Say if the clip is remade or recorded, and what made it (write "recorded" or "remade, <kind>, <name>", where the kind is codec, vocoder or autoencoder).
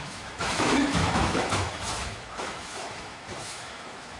remade, autoencoder, DAC-VAE